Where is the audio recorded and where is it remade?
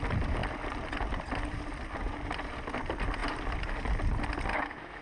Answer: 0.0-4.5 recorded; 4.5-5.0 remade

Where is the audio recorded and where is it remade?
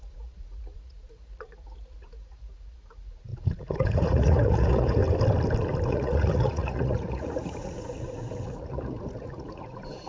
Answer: 0.0-5.0 remade; 5.0-5.9 recorded; 5.9-10.1 remade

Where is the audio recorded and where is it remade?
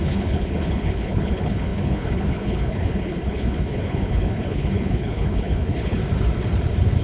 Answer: 0.0-6.0 remade; 6.0-7.0 recorded